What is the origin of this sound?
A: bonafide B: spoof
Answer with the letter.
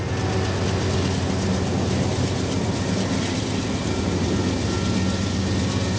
A